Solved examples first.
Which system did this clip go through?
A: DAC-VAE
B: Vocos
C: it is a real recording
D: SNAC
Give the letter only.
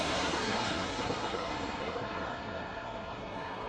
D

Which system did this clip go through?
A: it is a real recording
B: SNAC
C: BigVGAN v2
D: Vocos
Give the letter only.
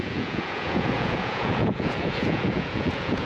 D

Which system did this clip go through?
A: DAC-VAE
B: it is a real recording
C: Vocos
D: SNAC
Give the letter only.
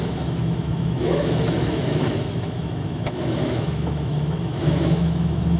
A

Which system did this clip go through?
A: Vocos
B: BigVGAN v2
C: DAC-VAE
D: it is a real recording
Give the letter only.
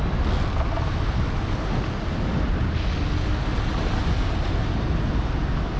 D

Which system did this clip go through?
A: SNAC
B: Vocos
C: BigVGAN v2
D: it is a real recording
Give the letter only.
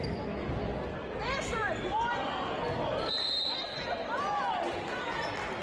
D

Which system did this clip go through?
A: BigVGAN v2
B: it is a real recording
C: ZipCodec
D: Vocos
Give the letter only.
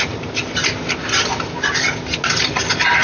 B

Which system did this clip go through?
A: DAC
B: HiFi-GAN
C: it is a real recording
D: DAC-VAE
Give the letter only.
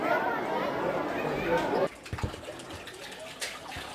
C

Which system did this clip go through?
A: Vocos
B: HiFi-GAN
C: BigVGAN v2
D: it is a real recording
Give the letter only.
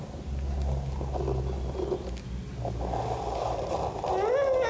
D